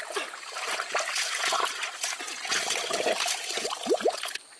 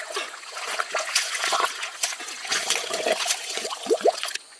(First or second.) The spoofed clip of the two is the second